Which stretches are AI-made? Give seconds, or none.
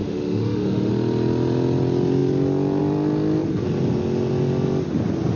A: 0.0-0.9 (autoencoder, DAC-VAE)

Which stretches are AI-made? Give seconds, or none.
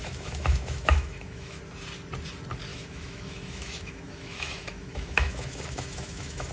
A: 0.0-1.6 (autoencoder, DAC-VAE); 2.7-6.5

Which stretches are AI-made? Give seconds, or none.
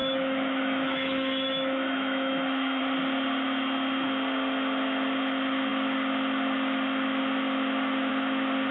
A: 0.0-2.8 (autoencoder, DAC-VAE)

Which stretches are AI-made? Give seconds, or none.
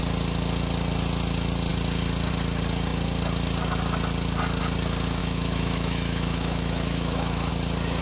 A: 5.2-7.5 (autoencoder, DAC-VAE)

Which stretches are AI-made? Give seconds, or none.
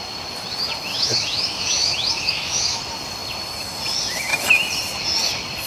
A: 0.9-2.8 (autoencoder, DAC-VAE)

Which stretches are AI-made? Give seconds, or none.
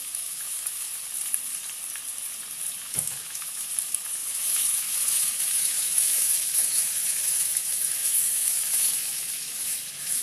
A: 0.0-0.9 (autoencoder, DAC-VAE); 2.8-10.2